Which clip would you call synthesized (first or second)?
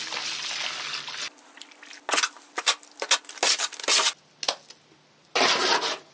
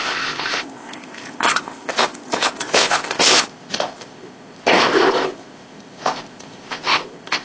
second